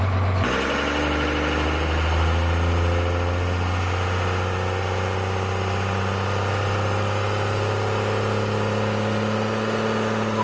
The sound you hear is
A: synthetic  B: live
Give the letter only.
B